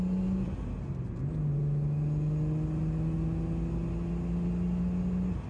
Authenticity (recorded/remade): recorded